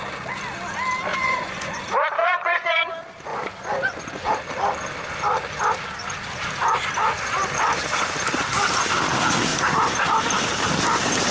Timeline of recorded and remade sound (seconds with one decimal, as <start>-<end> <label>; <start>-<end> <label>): 0.0-1.1 recorded; 1.1-1.8 remade; 1.8-2.2 recorded; 2.2-2.9 remade; 2.9-3.3 recorded; 3.3-4.3 remade; 4.3-11.3 recorded